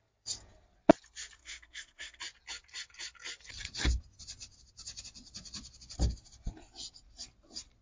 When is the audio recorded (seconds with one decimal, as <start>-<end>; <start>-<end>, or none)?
0.0-1.4; 2.2-7.8